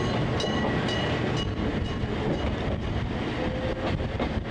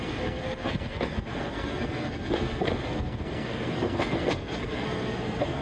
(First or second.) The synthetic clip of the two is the second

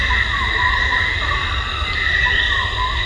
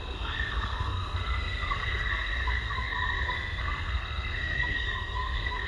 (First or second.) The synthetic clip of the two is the second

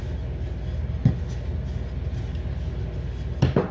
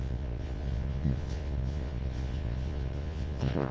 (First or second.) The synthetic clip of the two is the second